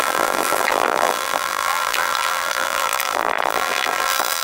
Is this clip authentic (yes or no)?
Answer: no